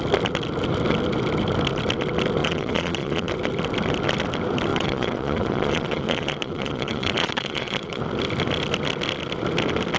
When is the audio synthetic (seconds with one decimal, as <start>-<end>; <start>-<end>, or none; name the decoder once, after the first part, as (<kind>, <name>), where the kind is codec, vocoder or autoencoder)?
2.4-3.3 (vocoder, Vocos); 4.7-8.0

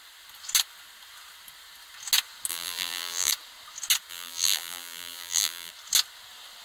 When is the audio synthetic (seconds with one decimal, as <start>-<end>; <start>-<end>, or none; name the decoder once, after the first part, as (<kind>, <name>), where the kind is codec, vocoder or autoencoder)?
2.5-3.3 (vocoder, BigVGAN v2); 4.1-5.7

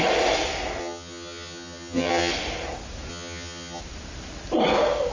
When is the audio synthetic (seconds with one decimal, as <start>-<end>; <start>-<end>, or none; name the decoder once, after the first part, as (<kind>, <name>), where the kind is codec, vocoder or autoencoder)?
0.8-2.3 (vocoder, HiFi-GAN); 3.1-3.8

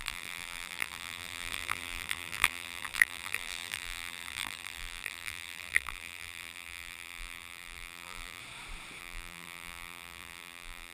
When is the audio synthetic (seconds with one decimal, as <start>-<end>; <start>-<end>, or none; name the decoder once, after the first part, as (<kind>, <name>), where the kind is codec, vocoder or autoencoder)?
0.0-8.4 (vocoder, BigVGAN v2); 9.0-10.9

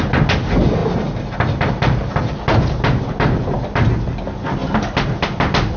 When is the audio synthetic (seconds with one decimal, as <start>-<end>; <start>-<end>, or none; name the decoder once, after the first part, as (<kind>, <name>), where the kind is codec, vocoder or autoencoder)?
none